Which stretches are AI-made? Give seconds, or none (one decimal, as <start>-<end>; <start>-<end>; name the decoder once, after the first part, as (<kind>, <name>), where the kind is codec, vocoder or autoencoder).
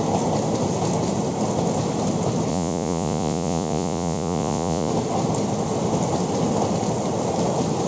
2.5-4.9 (vocoder, Vocos)